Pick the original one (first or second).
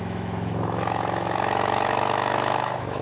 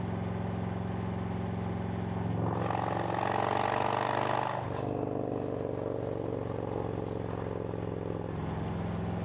second